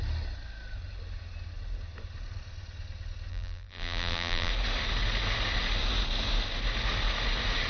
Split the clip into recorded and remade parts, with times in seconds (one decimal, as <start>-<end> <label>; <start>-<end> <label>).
0.0-3.3 recorded; 3.3-4.5 remade; 4.5-7.7 recorded